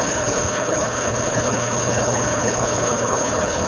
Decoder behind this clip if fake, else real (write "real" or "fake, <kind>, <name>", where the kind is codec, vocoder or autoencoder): fake, codec, HILCodec